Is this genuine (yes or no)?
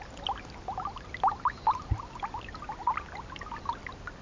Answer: yes